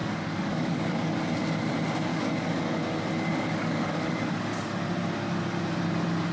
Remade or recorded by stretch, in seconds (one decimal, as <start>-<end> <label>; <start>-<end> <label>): 0.0-1.2 remade; 1.2-2.1 recorded; 2.1-2.8 remade; 2.8-3.3 recorded; 3.3-4.1 remade; 4.1-6.3 recorded